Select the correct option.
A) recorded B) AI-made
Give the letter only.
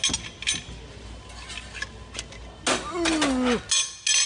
A